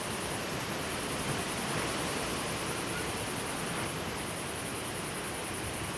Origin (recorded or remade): remade